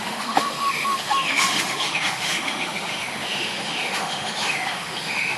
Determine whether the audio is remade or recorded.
remade